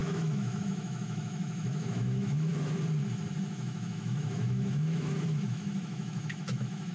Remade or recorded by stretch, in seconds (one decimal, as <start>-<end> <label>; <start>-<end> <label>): 0.0-2.5 remade; 2.5-3.5 recorded; 3.5-6.9 remade